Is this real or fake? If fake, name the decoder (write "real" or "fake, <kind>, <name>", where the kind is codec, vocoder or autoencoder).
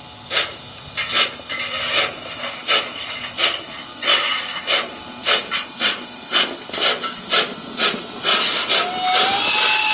real